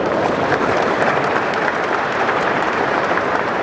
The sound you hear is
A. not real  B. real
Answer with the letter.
A